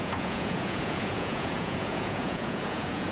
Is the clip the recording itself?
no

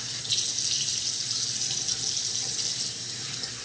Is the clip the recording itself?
yes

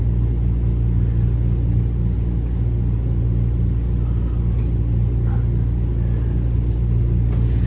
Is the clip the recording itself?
yes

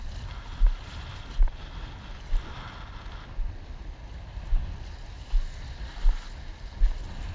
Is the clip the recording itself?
yes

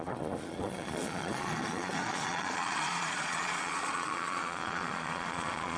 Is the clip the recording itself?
no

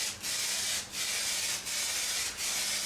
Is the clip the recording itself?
yes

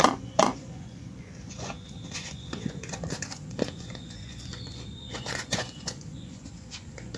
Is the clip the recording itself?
no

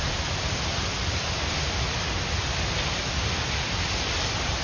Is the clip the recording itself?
yes